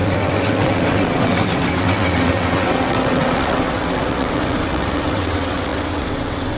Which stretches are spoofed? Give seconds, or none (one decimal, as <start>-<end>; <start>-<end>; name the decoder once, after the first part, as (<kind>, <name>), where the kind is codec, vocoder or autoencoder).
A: 0.0-6.6 (vocoder, WaveNeXt)